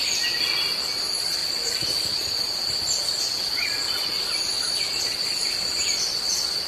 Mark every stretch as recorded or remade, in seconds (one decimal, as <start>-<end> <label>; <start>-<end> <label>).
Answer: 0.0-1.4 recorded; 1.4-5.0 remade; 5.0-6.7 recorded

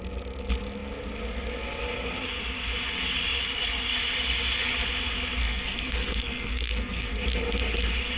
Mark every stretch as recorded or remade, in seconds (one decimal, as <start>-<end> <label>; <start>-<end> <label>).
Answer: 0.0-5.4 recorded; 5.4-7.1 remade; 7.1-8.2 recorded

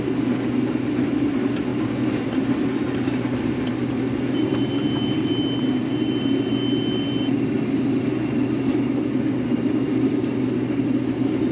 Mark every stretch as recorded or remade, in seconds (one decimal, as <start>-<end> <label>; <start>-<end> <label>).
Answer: 0.0-11.5 recorded

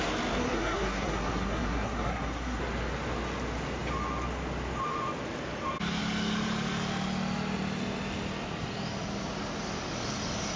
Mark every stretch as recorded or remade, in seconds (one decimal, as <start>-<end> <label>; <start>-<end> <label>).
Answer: 0.0-0.4 recorded; 0.4-2.6 remade; 2.6-10.6 recorded

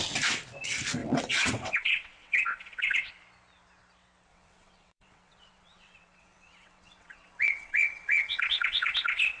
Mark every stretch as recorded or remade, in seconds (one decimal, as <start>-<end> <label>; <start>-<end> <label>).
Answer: 0.0-1.0 recorded; 1.0-3.1 remade; 3.1-4.3 recorded; 4.3-9.4 remade

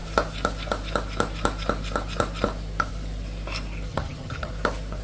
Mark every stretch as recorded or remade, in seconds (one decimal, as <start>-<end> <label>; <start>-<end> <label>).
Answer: 0.0-3.9 recorded; 3.9-4.5 remade; 4.5-5.0 recorded